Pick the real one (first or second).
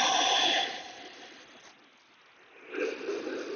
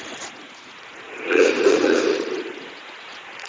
first